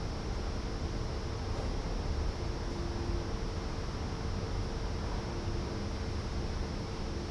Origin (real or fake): real